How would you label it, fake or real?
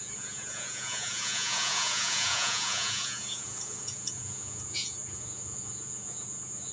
fake